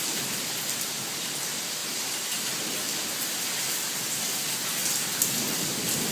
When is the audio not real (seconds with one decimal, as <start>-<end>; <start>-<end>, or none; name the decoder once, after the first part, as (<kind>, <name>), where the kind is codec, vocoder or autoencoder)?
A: none